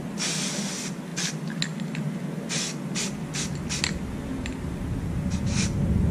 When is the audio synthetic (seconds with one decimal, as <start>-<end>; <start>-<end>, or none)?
none